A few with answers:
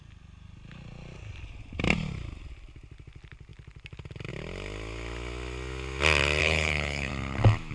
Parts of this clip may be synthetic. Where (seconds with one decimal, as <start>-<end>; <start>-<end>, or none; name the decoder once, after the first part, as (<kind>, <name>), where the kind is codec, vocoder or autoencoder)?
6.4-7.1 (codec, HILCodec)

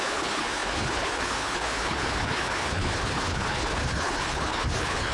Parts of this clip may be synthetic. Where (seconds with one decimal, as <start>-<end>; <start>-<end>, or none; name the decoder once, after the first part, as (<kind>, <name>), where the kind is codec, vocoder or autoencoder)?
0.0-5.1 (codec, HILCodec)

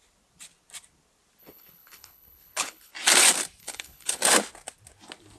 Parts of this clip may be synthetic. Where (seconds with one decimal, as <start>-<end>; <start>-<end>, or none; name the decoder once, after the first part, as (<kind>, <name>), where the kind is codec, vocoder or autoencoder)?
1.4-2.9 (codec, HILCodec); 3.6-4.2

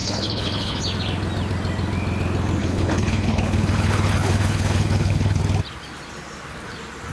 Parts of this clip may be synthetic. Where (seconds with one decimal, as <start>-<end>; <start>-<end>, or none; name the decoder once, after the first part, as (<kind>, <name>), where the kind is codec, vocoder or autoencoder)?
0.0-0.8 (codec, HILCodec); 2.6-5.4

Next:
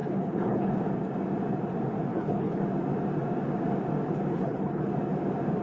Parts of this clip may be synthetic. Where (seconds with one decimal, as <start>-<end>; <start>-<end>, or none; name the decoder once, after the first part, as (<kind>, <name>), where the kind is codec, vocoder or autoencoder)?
0.0-0.7 (codec, HILCodec); 2.1-2.6; 4.3-4.9

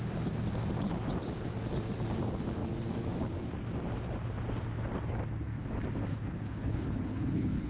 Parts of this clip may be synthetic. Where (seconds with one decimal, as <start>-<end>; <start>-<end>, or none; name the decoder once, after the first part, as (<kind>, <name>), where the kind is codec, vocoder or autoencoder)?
6.1-7.7 (codec, HILCodec)

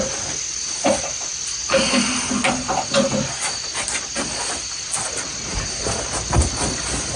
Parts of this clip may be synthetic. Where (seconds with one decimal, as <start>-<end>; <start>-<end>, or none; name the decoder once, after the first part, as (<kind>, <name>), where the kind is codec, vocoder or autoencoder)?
none

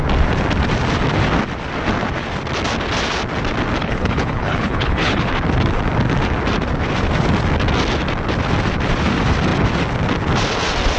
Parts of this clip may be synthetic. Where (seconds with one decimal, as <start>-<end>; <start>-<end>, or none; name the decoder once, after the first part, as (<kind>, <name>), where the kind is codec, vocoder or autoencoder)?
3.8-5.3 (codec, HILCodec)